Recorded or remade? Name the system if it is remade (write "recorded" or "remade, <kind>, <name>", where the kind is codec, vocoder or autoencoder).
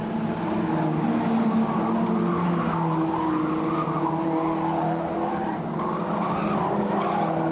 recorded